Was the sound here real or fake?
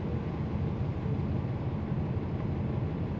real